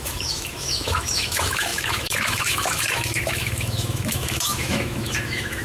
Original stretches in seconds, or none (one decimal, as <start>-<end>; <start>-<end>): none

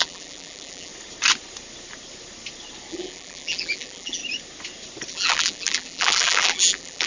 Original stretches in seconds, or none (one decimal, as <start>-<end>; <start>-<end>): 0.9-2.9; 4.2-5.1

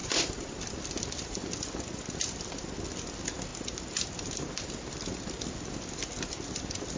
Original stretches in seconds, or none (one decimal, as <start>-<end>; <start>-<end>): 0.6-7.0

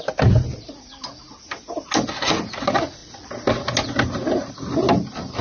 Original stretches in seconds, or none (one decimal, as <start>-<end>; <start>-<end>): 0.0-5.4

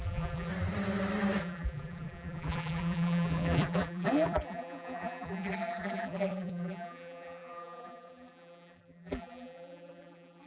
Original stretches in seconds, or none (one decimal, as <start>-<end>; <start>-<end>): 0.5-1.4